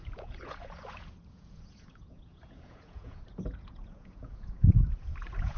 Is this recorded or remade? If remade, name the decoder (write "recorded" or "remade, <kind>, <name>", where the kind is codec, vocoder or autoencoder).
remade, vocoder, Vocos